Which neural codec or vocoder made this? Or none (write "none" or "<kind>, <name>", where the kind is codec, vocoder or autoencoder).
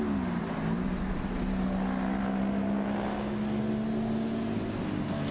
none